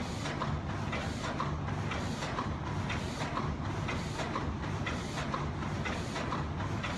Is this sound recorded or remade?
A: recorded